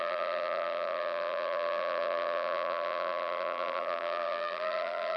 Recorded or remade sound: remade